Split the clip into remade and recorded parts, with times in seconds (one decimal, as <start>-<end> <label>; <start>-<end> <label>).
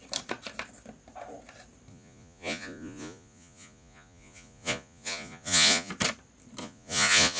0.0-1.9 recorded; 1.9-5.9 remade; 5.9-6.6 recorded; 6.6-7.4 remade